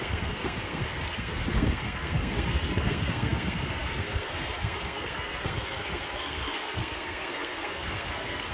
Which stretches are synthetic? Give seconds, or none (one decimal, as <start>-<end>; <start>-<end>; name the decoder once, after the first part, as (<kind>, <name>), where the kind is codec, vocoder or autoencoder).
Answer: 0.0-8.5 (codec, SNAC)